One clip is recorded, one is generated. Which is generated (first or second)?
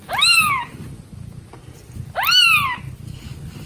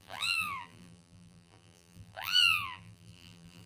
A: second